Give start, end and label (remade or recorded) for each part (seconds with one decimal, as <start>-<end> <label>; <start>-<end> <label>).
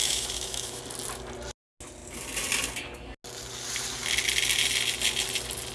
0.0-0.8 remade; 0.8-5.7 recorded